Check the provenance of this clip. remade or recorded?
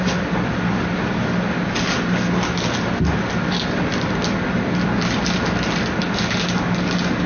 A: recorded